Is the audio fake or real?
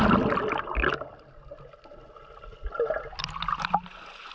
real